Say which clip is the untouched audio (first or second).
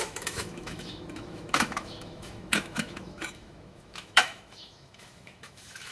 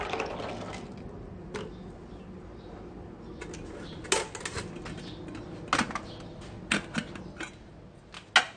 second